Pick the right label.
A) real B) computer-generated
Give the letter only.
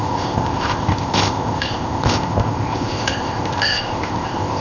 B